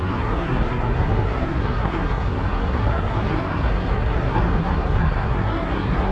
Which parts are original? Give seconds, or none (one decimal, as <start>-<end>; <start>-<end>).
none